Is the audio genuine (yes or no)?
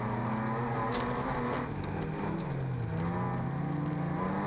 yes